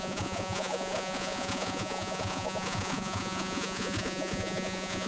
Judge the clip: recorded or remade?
remade